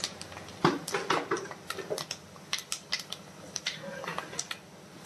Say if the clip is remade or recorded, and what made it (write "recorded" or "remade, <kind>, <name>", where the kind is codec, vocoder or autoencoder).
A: recorded